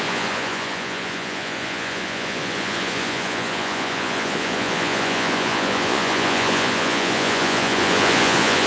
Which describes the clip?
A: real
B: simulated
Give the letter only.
B